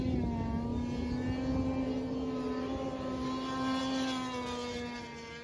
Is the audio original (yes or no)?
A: yes